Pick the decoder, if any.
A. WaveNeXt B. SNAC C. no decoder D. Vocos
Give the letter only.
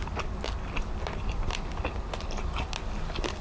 C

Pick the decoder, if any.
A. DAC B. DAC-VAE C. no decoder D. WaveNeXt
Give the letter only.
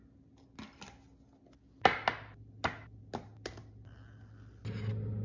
C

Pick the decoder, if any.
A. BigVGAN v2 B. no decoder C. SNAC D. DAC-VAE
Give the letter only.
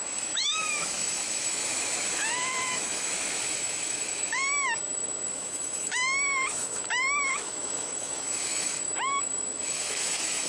D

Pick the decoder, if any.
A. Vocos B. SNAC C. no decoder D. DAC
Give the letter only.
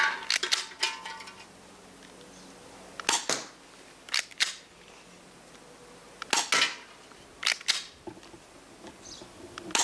C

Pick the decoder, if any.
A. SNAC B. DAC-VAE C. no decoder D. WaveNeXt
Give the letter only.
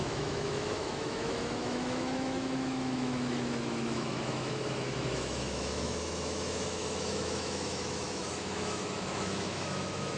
B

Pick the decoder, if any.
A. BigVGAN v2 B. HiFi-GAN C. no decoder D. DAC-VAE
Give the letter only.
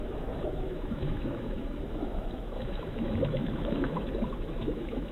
D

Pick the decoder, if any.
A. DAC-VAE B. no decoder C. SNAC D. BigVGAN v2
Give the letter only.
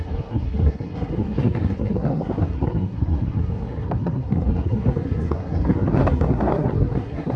C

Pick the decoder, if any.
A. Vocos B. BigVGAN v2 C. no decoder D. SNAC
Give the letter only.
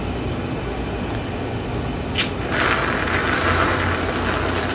C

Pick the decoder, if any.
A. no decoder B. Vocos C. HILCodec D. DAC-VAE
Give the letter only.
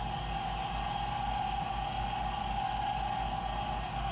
A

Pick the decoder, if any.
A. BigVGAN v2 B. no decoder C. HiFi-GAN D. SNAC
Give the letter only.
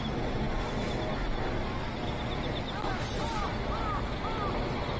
B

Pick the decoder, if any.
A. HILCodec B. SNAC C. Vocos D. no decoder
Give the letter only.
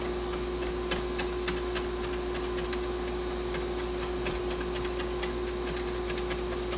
D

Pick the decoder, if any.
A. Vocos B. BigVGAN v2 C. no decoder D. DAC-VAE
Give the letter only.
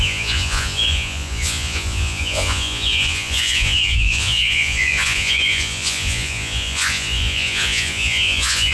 A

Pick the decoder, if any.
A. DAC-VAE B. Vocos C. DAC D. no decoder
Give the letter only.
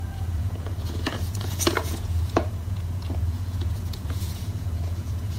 B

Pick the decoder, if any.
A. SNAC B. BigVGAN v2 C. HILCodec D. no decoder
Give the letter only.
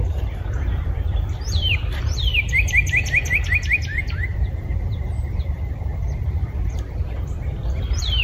B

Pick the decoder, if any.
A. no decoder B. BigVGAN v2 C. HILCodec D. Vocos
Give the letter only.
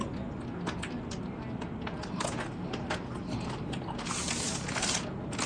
A